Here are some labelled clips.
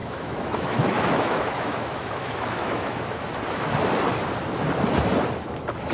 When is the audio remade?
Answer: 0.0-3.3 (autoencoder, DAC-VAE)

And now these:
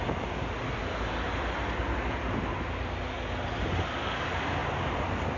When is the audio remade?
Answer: none

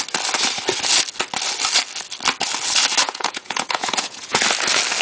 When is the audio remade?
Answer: 3.0-4.4 (vocoder, Vocos)

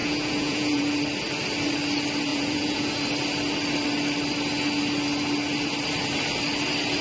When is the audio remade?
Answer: 0.0-0.8 (vocoder, Vocos); 2.3-2.9

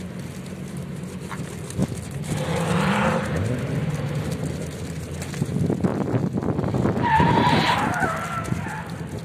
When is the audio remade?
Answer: 5.9-6.4 (vocoder, BigVGAN v2)